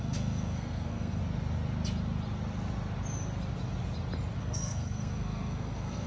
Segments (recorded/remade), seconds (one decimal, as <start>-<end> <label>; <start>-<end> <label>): 0.0-1.2 remade; 1.2-4.4 recorded; 4.4-6.1 remade